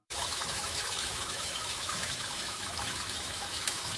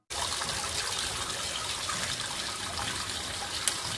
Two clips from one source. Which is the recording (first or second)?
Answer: second